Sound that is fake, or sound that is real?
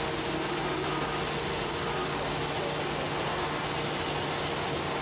real